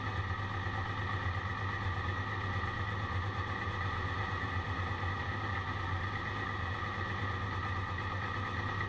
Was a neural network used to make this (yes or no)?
no